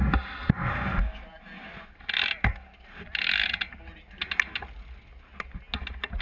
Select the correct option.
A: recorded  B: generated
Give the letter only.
A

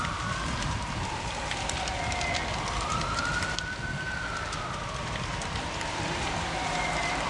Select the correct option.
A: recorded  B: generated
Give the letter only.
A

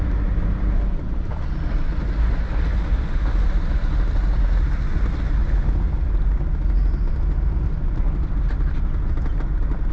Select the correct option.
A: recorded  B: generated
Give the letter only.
A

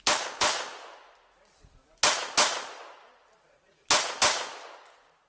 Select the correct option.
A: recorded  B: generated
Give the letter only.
A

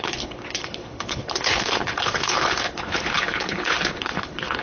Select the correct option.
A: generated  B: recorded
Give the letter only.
A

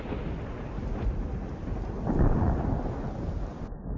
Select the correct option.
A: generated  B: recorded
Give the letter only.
B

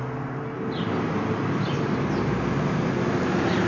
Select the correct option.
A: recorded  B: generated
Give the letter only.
A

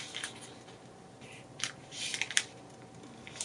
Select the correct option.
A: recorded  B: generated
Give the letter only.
A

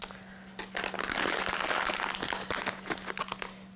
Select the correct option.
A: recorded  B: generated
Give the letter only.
A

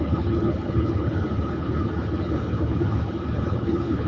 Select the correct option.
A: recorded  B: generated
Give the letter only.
B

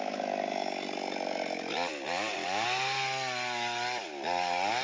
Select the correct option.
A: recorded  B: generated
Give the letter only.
A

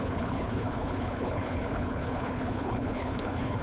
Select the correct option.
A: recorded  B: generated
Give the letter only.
B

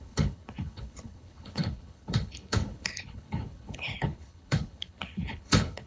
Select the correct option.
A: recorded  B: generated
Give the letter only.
B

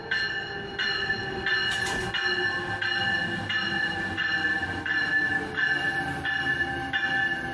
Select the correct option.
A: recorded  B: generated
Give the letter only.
A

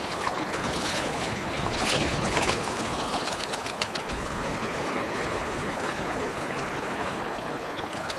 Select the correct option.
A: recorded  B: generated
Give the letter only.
B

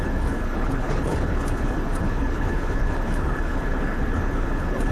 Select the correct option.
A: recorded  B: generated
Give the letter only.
B